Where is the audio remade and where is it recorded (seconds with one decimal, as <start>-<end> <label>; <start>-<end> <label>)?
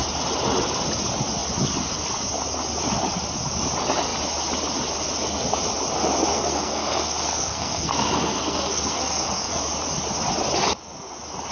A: 0.0-6.3 recorded; 6.3-9.6 remade; 9.6-11.5 recorded